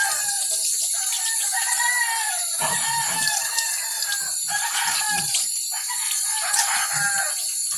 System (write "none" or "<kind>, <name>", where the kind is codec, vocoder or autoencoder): none